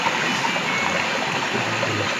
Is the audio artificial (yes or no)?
no